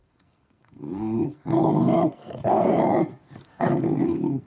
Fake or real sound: fake